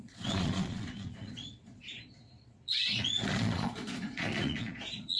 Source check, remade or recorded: remade